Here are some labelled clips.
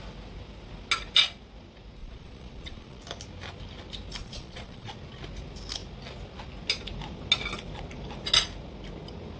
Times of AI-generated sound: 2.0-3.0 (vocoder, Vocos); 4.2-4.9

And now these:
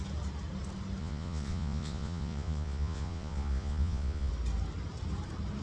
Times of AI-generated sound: 1.0-4.3 (vocoder, Vocos)